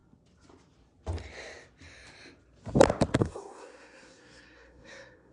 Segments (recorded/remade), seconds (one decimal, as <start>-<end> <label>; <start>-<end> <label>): 0.0-3.2 recorded; 3.2-5.3 remade